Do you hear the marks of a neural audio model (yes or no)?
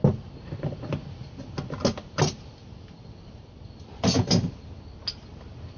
no